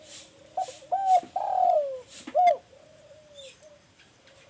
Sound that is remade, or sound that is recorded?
recorded